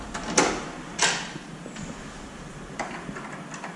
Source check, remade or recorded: recorded